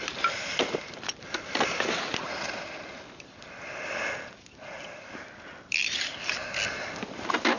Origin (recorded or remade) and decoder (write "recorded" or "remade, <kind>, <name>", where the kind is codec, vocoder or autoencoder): recorded